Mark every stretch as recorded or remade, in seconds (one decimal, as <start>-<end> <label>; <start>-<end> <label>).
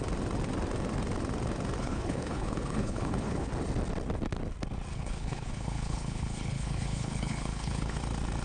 0.0-1.8 recorded; 1.8-3.5 remade; 3.5-4.9 recorded; 4.9-8.0 remade; 8.0-8.4 recorded